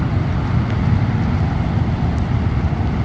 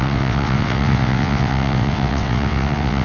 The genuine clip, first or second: first